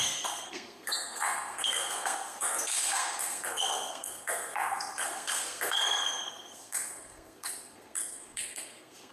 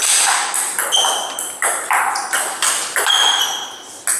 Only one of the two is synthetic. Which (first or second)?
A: first